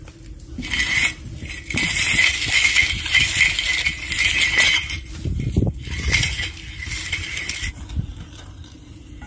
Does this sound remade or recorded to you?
recorded